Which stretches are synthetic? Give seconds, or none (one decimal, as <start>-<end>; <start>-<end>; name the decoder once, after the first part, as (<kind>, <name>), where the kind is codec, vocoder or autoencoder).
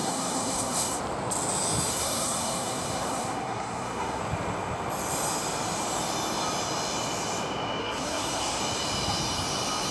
0.0-1.0 (codec, SNAC); 1.9-4.2; 7.8-8.6